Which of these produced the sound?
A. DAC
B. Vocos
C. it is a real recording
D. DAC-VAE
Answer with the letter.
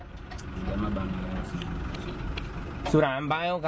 C